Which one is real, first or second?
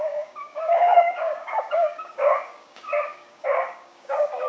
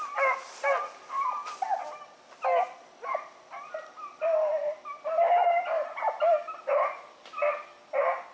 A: second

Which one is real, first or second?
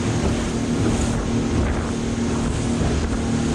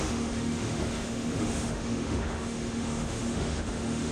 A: first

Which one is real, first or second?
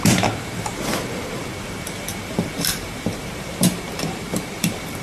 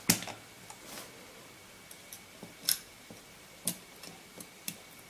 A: second